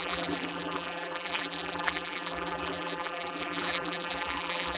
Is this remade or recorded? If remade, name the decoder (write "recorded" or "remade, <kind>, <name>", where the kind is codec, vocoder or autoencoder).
remade, vocoder, BigVGAN v2